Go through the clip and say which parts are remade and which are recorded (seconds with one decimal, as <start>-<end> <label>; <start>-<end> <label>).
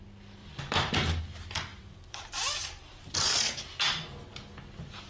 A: 0.0-0.4 recorded; 0.4-1.2 remade; 1.2-1.7 recorded; 1.7-3.0 remade; 3.0-5.1 recorded